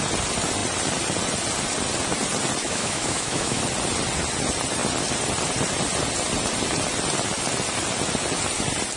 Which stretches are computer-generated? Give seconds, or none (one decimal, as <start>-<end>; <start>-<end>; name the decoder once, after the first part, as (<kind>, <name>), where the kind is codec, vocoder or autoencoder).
2.6-3.6 (autoencoder, DAC-VAE)